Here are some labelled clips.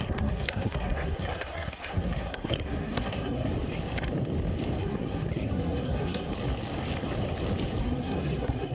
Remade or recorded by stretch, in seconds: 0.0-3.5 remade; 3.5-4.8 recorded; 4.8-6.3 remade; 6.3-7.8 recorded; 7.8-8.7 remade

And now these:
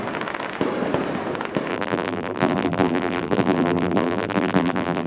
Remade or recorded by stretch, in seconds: 0.0-1.7 recorded; 1.7-5.1 remade